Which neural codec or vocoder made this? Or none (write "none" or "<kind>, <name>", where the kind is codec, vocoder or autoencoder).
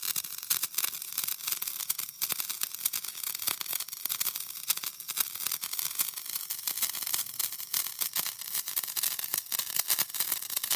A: none